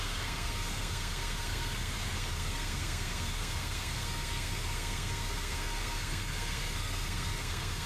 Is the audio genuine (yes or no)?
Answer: no